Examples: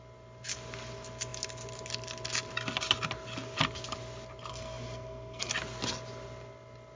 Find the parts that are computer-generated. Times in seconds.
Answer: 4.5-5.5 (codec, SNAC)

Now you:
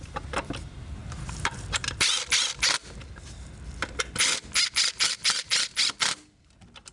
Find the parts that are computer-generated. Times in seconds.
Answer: none

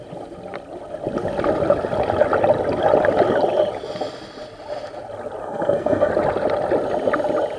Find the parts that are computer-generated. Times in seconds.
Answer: 5.4-6.1 (codec, SNAC)